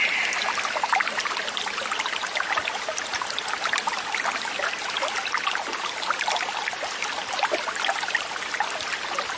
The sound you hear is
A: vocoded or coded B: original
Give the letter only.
B